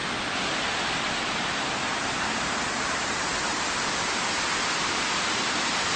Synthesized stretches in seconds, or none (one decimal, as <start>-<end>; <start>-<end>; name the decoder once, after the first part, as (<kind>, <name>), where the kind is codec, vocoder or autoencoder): 1.9-5.5 (vocoder, BigVGAN v2)